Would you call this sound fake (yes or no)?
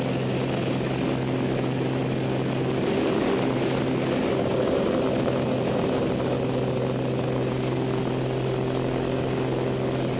no